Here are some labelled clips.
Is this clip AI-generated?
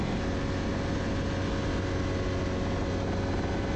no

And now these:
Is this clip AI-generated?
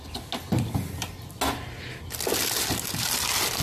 no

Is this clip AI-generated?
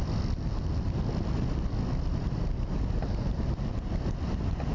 no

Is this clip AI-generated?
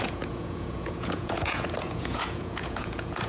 yes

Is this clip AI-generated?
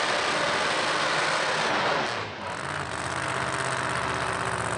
no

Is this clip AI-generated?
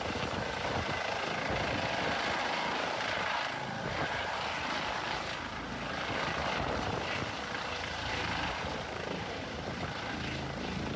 no